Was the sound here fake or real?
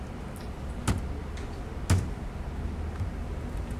real